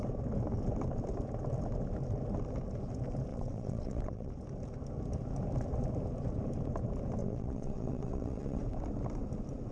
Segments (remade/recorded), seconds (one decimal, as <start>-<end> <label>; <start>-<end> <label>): 0.0-3.3 recorded; 3.3-4.3 remade; 4.3-7.2 recorded; 7.2-8.6 remade; 8.6-9.7 recorded

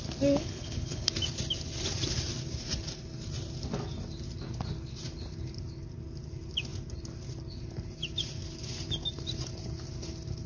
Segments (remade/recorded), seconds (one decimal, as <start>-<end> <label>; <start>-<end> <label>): 0.0-0.4 recorded; 0.4-1.1 remade; 1.1-10.5 recorded

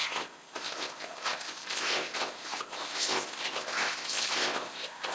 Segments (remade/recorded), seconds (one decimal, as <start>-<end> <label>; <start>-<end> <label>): 0.0-5.1 remade

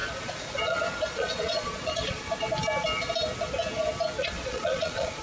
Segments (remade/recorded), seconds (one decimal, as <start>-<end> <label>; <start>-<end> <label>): 0.0-2.2 remade; 2.2-4.2 recorded; 4.2-5.2 remade

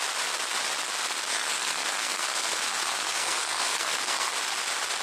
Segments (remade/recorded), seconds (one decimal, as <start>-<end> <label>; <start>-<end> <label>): 0.0-1.3 recorded; 1.3-4.3 remade; 4.3-5.0 recorded

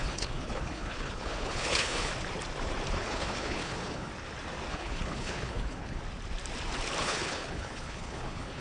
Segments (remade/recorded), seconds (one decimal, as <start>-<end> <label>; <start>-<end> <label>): 0.0-2.1 remade; 2.1-2.9 recorded; 2.9-4.1 remade; 4.1-4.7 recorded; 4.7-6.0 remade; 6.0-7.0 recorded; 7.0-8.6 remade